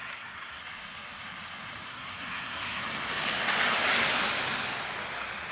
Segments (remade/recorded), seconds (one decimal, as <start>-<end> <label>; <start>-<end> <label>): 0.0-0.6 remade; 0.6-1.9 recorded; 1.9-2.8 remade; 2.8-5.5 recorded